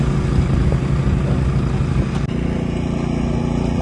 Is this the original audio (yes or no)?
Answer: yes